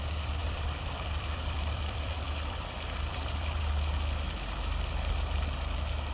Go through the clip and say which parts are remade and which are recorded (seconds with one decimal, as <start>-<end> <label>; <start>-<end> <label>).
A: 0.0-0.4 recorded; 0.4-3.6 remade; 3.6-6.1 recorded